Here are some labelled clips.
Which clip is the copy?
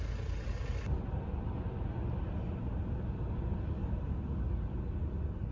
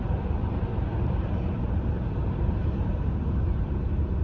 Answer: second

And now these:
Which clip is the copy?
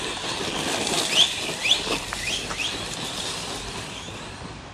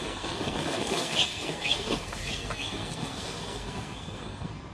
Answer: second